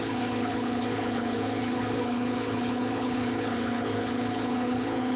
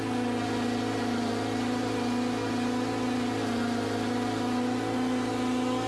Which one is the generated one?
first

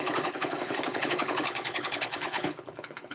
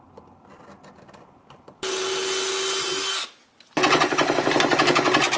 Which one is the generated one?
first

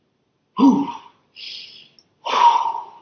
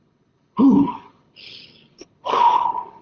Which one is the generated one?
second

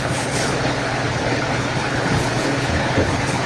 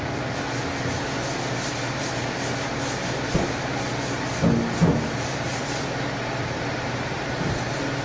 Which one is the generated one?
first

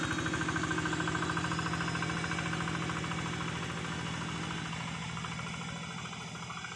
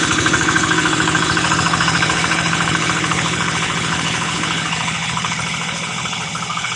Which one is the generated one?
second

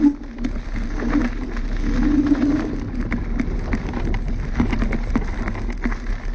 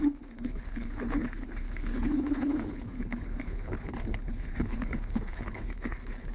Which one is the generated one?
second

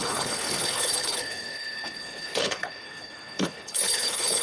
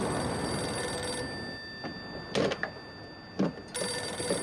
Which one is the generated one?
first